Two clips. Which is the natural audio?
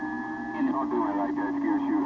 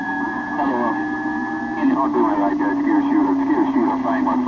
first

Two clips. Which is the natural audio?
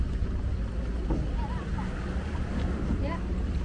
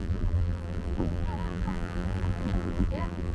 first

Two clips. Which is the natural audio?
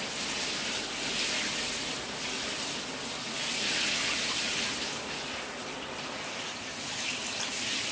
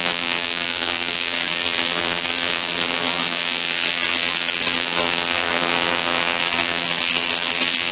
first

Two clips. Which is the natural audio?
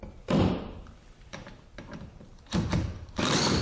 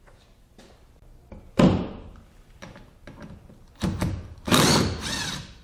second